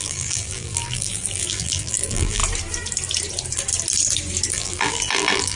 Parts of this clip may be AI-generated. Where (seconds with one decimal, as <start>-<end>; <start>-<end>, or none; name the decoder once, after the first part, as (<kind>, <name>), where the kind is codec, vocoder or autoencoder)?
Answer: 0.0-2.4 (vocoder, BigVGAN v2); 4.5-5.6